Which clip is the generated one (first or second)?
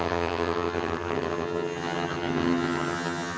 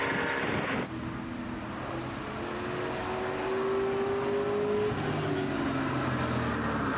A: first